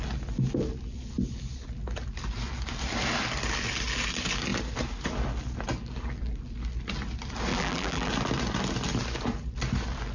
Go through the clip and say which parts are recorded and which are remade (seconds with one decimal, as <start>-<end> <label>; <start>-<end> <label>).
0.0-7.5 recorded; 7.5-8.1 remade; 8.1-10.1 recorded